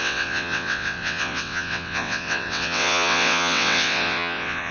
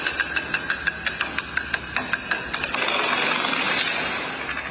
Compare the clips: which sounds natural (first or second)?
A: second